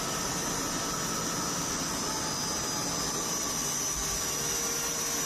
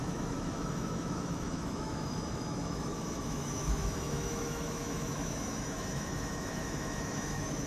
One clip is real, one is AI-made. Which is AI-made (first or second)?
second